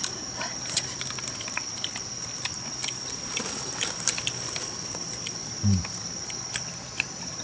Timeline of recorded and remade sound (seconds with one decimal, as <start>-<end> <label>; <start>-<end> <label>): 0.0-2.8 recorded; 2.8-5.6 remade; 5.6-7.4 recorded